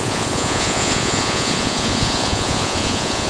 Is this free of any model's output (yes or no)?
no